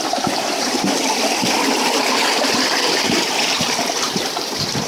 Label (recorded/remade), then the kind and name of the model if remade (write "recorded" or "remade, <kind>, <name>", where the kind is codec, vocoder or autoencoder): remade, vocoder, BigVGAN v2